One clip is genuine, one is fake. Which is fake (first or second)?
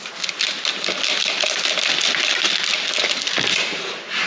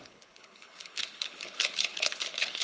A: second